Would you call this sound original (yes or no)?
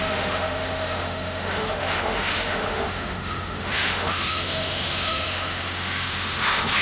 no